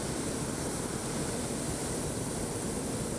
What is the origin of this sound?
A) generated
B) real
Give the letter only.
B